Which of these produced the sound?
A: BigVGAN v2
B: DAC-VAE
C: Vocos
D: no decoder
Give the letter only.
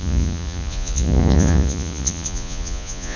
C